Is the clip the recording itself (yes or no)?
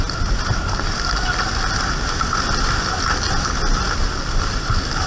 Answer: yes